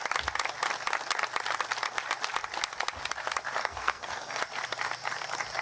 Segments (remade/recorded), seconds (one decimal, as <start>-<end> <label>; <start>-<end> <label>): 0.0-3.6 recorded; 3.6-4.4 remade; 4.4-5.6 recorded